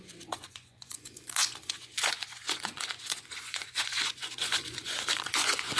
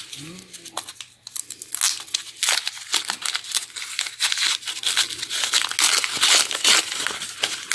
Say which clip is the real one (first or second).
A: second